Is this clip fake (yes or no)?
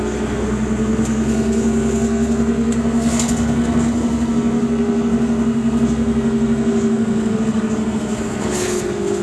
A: yes